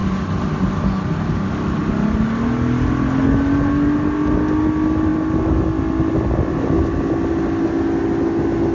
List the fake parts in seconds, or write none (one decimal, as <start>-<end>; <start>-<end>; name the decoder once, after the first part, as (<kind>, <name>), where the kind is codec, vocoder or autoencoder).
none